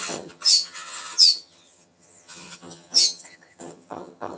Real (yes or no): no